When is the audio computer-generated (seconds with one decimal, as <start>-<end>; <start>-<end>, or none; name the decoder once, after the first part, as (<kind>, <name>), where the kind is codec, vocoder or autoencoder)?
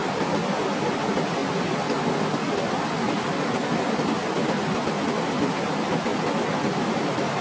0.9-1.4 (vocoder, BigVGAN v2); 5.4-6.1; 6.9-7.4